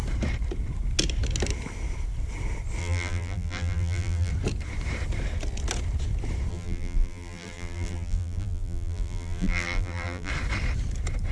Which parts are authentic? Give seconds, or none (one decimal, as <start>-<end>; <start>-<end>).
0.0-2.8; 4.3-6.5; 10.3-11.3